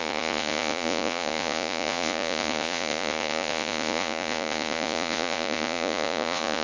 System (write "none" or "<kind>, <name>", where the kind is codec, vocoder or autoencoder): vocoder, Vocos